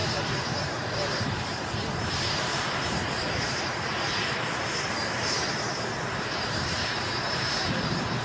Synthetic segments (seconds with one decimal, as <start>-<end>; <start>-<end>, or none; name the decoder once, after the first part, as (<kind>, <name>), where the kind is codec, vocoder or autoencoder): 0.0-8.2 (vocoder, BigVGAN v2)